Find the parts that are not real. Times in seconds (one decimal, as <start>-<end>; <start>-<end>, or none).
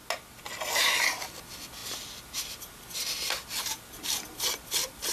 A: none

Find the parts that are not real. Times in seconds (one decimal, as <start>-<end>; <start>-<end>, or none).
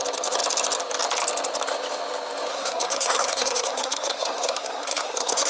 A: 2.5-5.5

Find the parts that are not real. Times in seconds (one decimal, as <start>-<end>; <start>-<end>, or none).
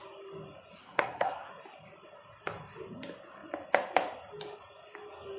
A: 0.8-1.5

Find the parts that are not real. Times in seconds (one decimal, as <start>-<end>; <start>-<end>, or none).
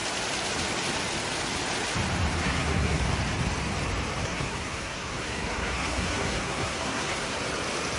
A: 2.3-3.0; 4.2-7.4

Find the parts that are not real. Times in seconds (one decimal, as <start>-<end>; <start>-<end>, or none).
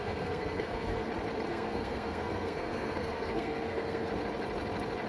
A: 0.0-1.1; 1.5-4.1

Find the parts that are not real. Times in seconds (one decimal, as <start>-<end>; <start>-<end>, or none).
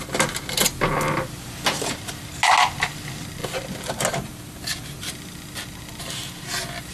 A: none